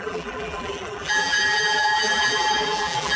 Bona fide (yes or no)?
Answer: no